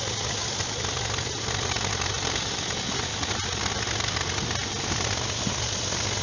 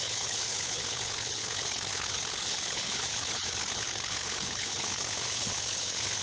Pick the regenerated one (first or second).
second